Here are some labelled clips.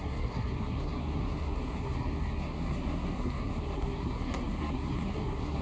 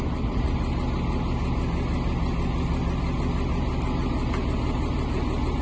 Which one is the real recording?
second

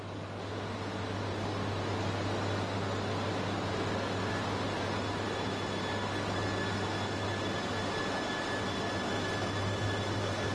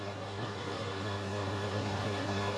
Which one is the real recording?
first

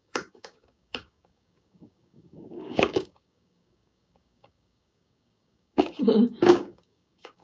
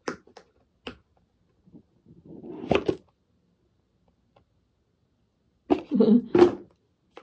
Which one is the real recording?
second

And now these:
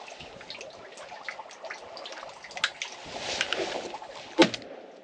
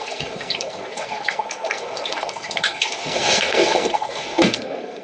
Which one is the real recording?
first